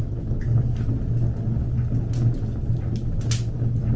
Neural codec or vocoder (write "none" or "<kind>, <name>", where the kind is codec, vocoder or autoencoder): none